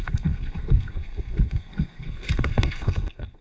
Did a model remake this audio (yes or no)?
yes